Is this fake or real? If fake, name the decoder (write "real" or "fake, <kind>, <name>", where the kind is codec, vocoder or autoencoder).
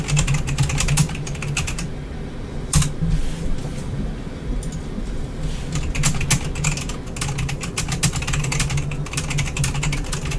real